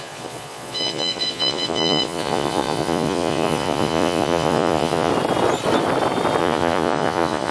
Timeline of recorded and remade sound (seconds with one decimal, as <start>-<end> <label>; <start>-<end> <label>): 0.0-5.1 remade; 5.1-6.4 recorded; 6.4-7.5 remade